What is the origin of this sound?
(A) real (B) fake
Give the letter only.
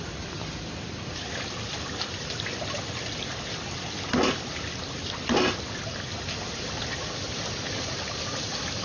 B